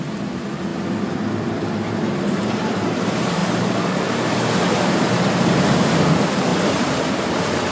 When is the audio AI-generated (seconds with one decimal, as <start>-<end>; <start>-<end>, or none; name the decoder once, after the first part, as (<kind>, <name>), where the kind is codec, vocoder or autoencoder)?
0.0-3.4 (vocoder, BigVGAN v2); 3.9-7.7